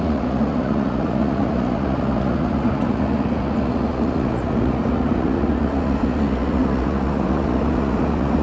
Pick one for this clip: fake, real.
fake